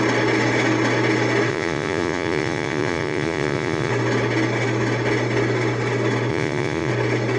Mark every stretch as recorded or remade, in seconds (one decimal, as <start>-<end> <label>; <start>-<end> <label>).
0.0-1.5 recorded; 1.5-3.9 remade; 3.9-6.3 recorded; 6.3-6.9 remade; 6.9-7.4 recorded